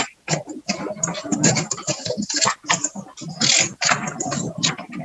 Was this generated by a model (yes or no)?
no